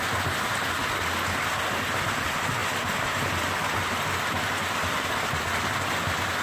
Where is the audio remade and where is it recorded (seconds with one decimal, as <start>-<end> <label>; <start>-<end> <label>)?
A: 0.0-2.6 recorded; 2.6-5.4 remade; 5.4-6.4 recorded